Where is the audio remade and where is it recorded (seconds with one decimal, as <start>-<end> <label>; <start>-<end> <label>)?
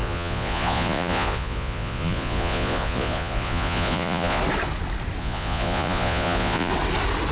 0.0-4.4 remade; 4.4-5.2 recorded; 5.2-6.7 remade; 6.7-7.3 recorded